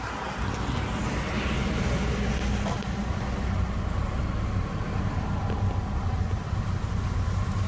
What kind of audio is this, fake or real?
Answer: real